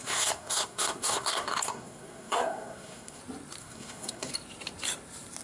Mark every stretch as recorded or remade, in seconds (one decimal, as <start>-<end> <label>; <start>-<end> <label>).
0.0-3.2 remade; 3.2-3.6 recorded; 3.6-4.3 remade; 4.3-5.4 recorded

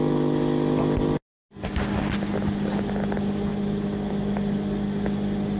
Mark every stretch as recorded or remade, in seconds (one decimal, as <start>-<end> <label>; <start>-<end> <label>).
0.0-5.6 recorded

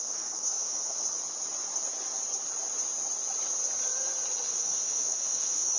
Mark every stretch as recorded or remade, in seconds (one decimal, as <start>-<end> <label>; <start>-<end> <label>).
0.0-1.0 remade; 1.0-4.5 recorded; 4.5-5.8 remade

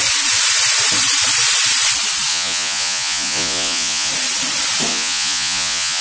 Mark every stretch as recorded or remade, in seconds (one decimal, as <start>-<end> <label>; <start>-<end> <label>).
0.0-2.3 recorded; 2.3-4.1 remade; 4.1-4.9 recorded; 4.9-6.0 remade

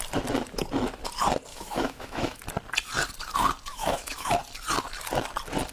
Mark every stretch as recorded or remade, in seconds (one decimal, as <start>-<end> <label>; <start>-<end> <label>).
0.0-1.5 recorded; 1.5-2.4 remade; 2.4-3.7 recorded; 3.7-4.3 remade; 4.3-5.7 recorded

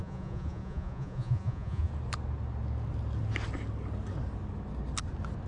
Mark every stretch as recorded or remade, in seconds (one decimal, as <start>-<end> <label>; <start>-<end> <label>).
0.0-1.9 remade; 1.9-5.5 recorded